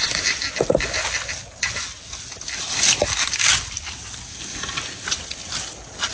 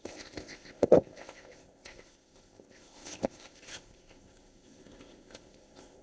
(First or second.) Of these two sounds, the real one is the first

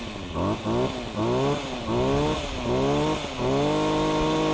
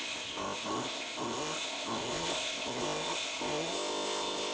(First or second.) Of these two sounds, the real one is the first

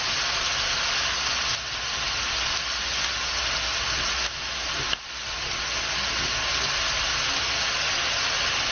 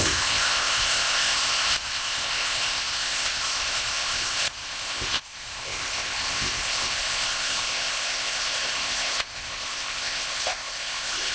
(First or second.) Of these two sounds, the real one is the first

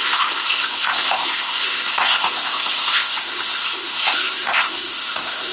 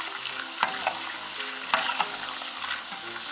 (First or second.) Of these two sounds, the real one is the second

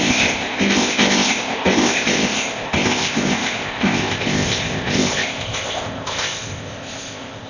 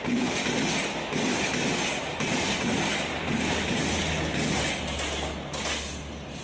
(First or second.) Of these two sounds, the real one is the second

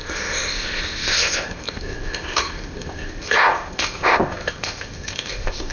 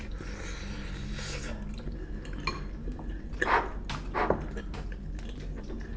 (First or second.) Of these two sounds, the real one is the second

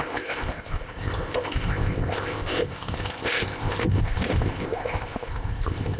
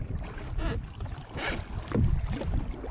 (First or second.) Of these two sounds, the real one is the second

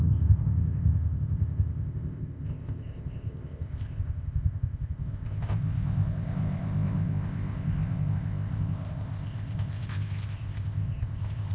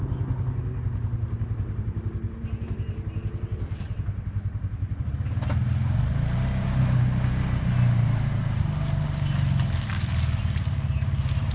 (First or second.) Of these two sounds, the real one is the second